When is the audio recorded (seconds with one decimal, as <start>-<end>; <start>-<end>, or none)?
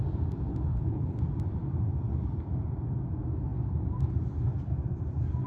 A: 0.0-0.5; 1.2-5.5